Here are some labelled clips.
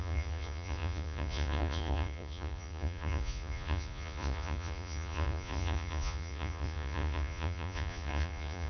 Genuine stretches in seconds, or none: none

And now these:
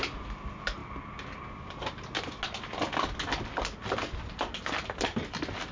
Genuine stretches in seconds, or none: 0.0-5.7

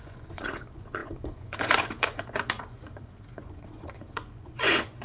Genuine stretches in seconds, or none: none

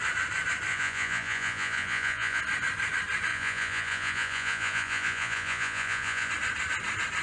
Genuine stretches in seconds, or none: 0.0-0.7; 2.4-3.3; 6.3-7.2

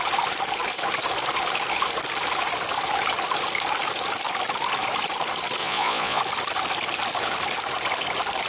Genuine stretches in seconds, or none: 0.0-5.6; 6.2-8.5

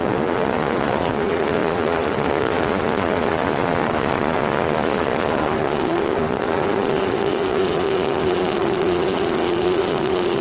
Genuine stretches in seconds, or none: none

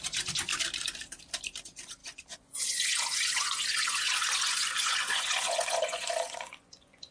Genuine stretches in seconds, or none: 0.5-1.6

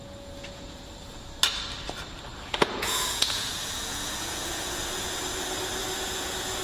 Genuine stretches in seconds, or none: 1.2-2.3; 5.0-5.8